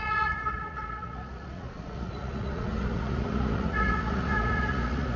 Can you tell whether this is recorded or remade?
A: remade